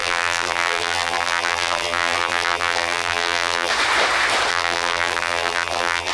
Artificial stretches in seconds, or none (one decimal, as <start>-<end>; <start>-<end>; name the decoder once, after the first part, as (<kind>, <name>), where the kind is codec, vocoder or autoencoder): 0.0-3.7 (vocoder, BigVGAN v2); 4.5-6.1